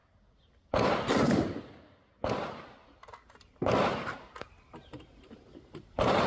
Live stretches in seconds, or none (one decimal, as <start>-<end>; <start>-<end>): 0.0-3.4